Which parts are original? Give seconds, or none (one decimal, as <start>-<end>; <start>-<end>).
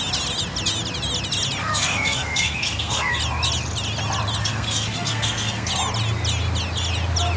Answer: 0.0-1.6; 3.2-4.4; 5.7-7.4